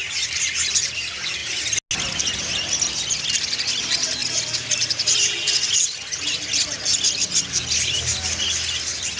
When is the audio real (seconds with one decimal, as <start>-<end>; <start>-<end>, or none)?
0.0-6.9; 7.4-9.2